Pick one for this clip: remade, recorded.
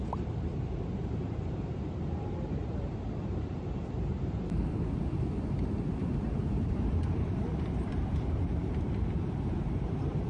remade